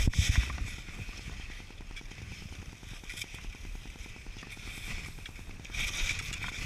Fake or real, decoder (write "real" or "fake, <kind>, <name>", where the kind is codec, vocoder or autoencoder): real